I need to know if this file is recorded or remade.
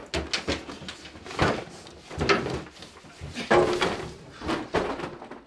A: recorded